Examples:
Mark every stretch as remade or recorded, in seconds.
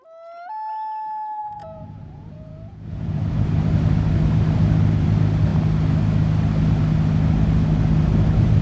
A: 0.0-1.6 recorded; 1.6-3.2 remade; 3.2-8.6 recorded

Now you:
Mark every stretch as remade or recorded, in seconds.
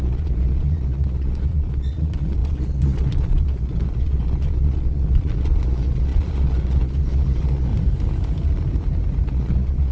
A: 0.0-7.7 remade; 7.7-9.3 recorded; 9.3-9.9 remade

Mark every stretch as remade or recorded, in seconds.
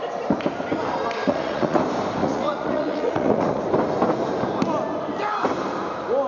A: 0.0-1.2 recorded; 1.2-1.8 remade; 1.8-2.2 recorded; 2.2-3.6 remade; 3.6-6.3 recorded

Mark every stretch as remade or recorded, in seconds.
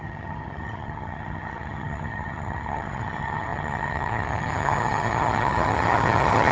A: 0.0-6.5 remade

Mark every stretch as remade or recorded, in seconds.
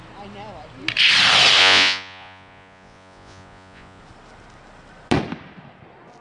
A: 0.0-1.6 recorded; 1.6-4.0 remade; 4.0-6.2 recorded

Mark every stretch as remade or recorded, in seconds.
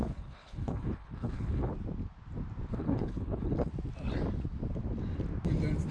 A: 0.0-1.7 remade; 1.7-2.7 recorded; 2.7-3.7 remade; 3.7-5.9 recorded